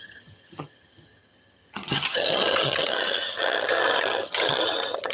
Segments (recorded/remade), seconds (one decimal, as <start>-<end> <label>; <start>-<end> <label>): 0.0-5.1 remade